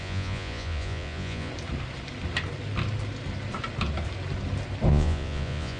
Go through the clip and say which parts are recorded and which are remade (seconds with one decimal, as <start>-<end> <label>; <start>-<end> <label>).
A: 0.0-1.5 remade; 1.5-4.9 recorded; 4.9-5.8 remade